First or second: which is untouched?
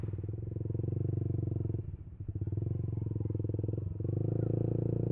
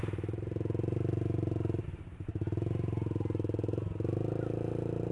first